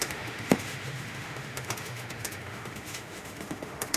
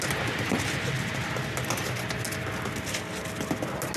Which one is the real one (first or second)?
second